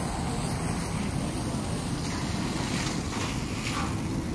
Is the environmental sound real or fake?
real